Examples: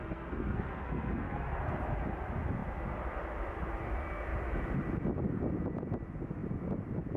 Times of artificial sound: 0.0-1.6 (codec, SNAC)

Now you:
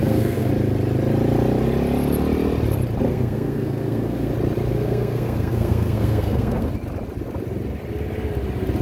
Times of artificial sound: 0.0-0.5 (codec, SNAC); 3.1-4.3; 4.7-6.7

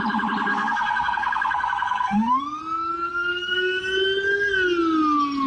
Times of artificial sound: 0.5-2.6 (codec, SNAC); 3.1-3.8